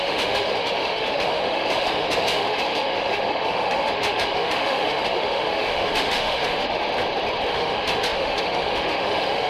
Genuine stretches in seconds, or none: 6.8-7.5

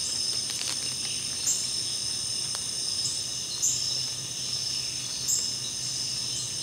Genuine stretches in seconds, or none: 4.0-6.6

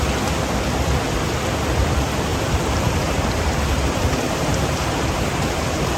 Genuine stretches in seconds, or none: 0.0-2.3

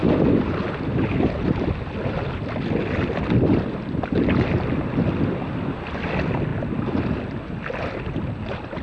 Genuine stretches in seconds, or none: 1.9-8.8

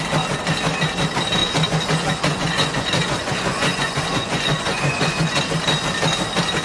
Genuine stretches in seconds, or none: 0.0-1.4; 5.4-6.6